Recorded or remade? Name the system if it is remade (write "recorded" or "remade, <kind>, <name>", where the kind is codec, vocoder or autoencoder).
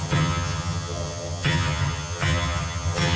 remade, vocoder, HiFi-GAN